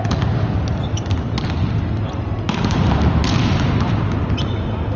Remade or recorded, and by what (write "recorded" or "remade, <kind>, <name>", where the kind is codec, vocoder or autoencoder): recorded